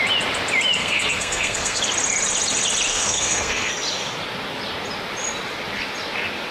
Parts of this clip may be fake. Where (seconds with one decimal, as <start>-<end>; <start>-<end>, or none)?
0.8-1.8; 2.9-3.7